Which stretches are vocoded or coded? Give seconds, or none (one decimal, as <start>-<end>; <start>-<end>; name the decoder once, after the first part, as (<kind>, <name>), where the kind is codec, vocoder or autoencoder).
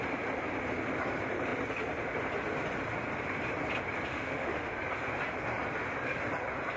4.1-4.7 (autoencoder, DAC-VAE)